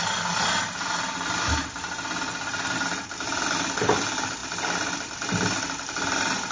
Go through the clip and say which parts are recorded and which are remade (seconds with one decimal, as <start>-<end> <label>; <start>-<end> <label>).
0.0-6.5 recorded